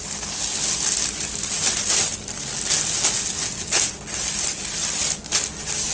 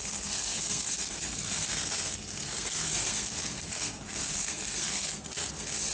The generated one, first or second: second